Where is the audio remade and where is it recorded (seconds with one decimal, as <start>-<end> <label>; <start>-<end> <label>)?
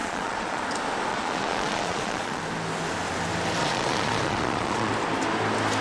0.0-0.6 remade; 0.6-1.1 recorded; 1.1-2.4 remade; 2.4-3.6 recorded; 3.6-4.9 remade; 4.9-5.8 recorded